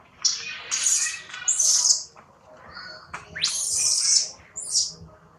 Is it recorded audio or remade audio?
remade